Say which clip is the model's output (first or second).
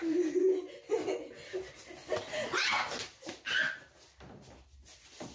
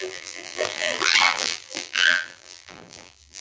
second